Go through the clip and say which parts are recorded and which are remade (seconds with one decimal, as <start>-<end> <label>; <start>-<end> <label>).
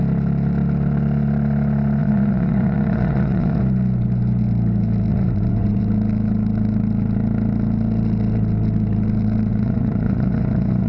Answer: 0.0-2.0 recorded; 2.0-3.6 remade; 3.6-5.1 recorded; 5.1-5.8 remade; 5.8-9.5 recorded; 9.5-10.9 remade